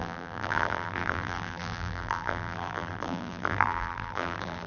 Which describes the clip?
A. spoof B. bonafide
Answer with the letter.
A